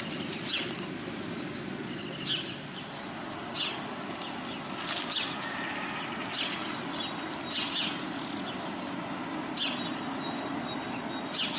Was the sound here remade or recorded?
recorded